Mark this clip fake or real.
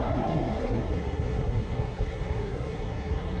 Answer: fake